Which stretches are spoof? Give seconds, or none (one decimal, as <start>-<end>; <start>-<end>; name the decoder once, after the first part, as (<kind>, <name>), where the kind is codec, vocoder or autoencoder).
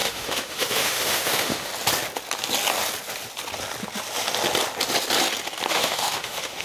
0.0-1.7 (autoencoder, DAC-VAE); 5.7-6.6